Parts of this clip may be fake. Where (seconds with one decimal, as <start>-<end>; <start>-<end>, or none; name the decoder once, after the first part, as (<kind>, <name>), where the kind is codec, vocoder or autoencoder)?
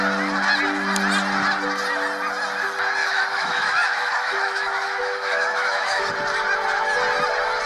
3.0-6.1 (autoencoder, DAC-VAE)